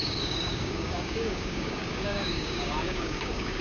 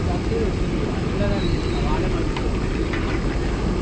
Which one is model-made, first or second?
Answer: first